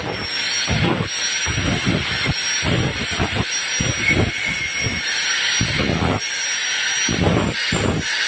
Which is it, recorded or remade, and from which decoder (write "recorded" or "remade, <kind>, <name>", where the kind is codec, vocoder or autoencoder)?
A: recorded